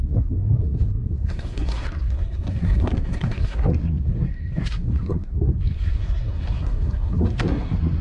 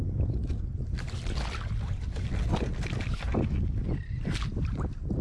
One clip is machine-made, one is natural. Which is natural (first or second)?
second